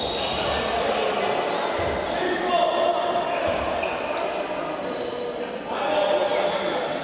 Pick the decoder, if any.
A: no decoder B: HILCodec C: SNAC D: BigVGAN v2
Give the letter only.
A